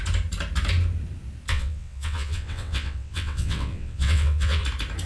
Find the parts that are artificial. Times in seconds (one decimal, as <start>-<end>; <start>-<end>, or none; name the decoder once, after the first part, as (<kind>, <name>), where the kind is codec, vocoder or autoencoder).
1.5-4.6 (vocoder, WaveNeXt)